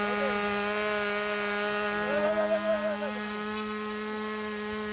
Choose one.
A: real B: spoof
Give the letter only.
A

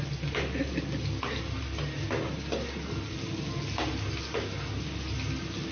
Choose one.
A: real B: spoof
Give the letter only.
A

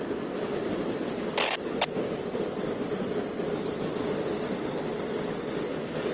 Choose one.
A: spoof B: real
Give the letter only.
B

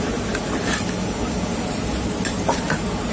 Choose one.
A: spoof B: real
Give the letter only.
B